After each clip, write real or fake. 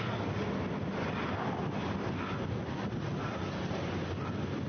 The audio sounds real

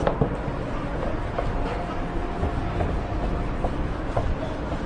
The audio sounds real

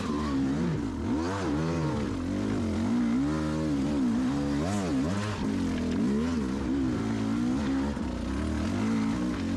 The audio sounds real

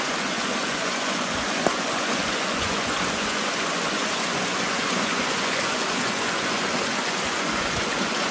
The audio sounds fake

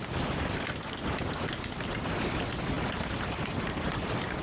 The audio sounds real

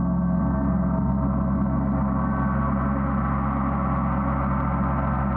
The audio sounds real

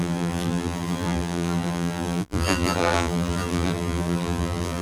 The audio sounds fake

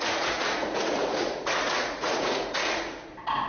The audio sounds fake